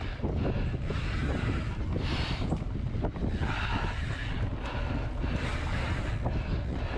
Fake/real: real